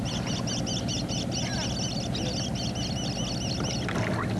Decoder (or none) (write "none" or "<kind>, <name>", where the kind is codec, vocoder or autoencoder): none